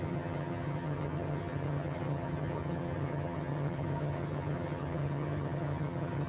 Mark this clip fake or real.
fake